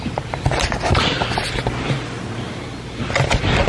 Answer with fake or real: real